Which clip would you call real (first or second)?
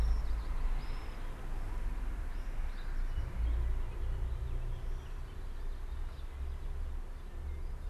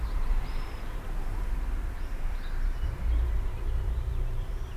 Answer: first